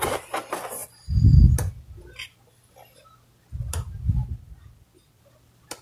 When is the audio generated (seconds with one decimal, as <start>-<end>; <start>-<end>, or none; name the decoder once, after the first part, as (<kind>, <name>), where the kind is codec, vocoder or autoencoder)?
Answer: 4.2-5.2 (vocoder, BigVGAN v2)